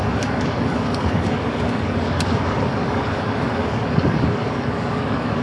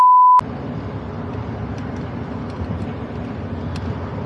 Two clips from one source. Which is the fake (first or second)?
first